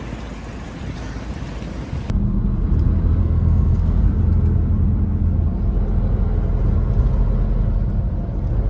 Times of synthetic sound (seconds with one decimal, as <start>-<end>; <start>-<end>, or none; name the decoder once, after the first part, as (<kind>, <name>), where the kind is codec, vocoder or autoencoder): 3.2-4.0 (codec, SNAC)